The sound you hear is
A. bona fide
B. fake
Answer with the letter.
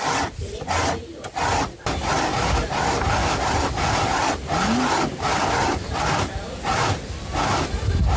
A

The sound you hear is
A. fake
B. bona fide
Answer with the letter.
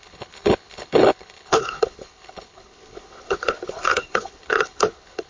A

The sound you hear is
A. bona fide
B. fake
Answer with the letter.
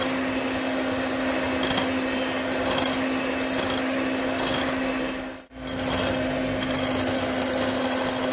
A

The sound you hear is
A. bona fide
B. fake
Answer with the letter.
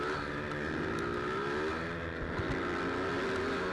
A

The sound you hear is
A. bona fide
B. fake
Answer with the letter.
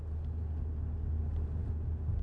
A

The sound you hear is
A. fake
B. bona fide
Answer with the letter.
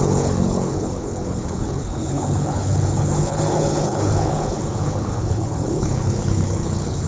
A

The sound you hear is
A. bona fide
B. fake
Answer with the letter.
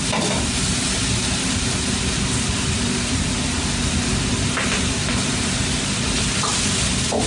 A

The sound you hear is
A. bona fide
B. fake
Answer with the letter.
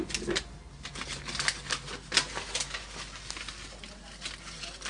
A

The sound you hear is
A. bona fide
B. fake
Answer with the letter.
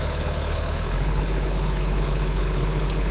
B